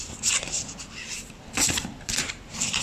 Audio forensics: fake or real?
fake